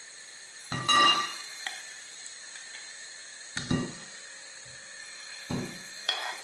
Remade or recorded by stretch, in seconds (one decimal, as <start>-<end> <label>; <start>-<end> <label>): 0.0-0.6 recorded; 0.6-1.8 remade; 1.8-5.0 recorded; 5.0-6.4 remade